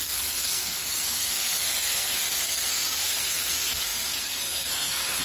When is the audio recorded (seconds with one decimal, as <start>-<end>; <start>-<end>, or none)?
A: none